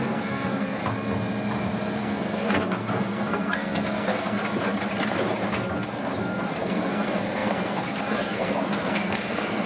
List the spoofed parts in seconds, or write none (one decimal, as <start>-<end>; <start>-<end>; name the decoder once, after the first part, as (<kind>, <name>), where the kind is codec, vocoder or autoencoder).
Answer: 0.0-0.8 (codec, SNAC); 2.0-4.4; 6.5-9.7